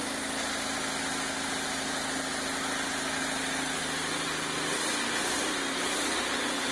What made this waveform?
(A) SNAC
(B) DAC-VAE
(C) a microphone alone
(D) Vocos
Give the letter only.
C